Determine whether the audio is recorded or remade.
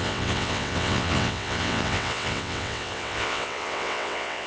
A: remade